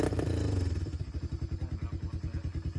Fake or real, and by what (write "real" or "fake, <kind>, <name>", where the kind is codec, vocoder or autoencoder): real